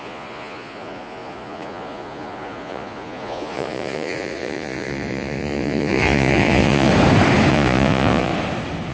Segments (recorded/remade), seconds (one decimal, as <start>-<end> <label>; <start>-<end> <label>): 0.0-6.9 remade; 6.9-7.5 recorded; 7.5-8.3 remade; 8.3-8.9 recorded